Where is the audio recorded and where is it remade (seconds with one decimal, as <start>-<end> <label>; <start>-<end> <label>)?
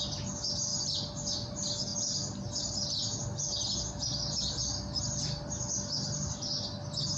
0.0-7.2 recorded